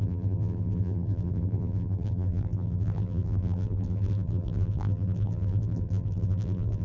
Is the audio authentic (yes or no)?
no